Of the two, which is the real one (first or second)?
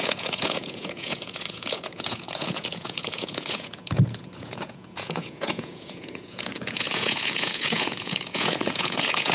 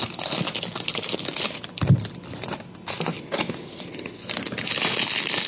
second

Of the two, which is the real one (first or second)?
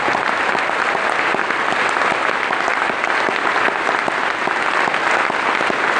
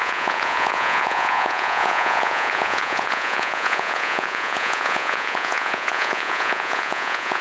first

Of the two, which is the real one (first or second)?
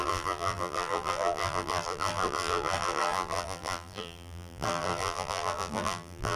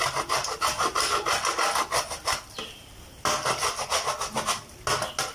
second